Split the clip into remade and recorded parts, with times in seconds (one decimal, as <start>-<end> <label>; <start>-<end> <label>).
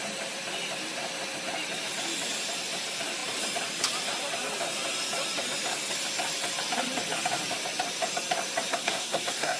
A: 0.0-8.7 recorded; 8.7-9.6 remade